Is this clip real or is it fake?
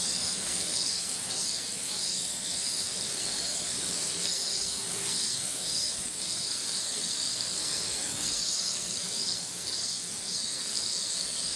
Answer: fake